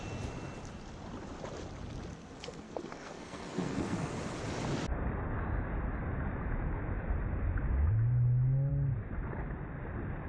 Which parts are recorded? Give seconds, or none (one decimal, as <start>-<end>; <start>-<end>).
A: 0.0-2.1; 4.1-10.3